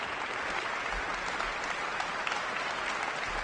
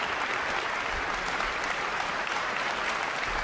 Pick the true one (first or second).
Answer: first